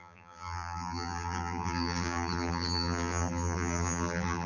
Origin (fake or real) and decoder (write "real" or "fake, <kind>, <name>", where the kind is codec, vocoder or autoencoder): fake, vocoder, BigVGAN v2